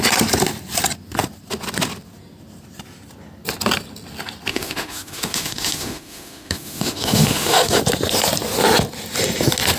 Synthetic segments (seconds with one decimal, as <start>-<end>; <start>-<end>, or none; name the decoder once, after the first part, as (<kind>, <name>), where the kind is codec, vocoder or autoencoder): 4.5-7.8 (autoencoder, DAC-VAE)